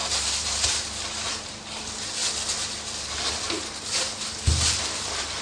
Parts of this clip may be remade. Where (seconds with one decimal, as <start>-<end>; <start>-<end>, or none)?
0.0-1.3